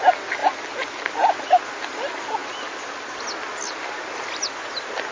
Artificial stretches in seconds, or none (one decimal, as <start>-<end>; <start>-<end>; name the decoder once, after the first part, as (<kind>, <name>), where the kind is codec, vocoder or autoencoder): none

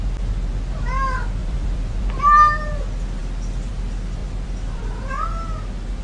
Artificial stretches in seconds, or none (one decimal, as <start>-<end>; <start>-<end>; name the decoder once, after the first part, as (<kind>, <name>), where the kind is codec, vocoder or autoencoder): 1.4-2.1 (vocoder, BigVGAN v2); 4.2-5.1

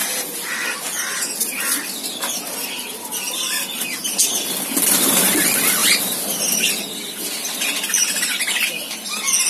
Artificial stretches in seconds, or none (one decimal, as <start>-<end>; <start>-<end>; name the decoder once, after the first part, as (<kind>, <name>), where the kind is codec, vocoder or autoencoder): 0.0-1.6 (vocoder, BigVGAN v2)

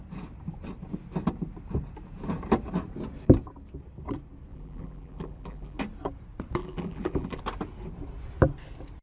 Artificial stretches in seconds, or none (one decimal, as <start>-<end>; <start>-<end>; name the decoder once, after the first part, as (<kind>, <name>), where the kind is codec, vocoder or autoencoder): 4.5-5.8 (vocoder, BigVGAN v2); 6.6-7.4